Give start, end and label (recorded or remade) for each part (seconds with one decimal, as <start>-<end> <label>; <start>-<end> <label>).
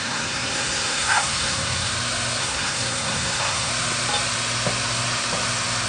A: 0.0-1.9 remade; 1.9-2.4 recorded; 2.4-3.7 remade; 3.7-5.9 recorded